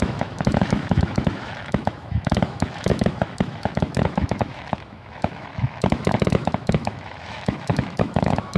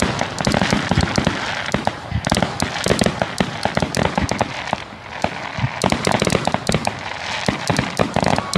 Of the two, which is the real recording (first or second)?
second